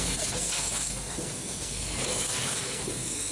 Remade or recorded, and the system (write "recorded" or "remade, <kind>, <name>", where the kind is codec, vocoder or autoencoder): remade, codec, SNAC